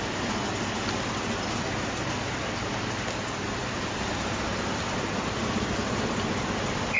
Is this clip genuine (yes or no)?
yes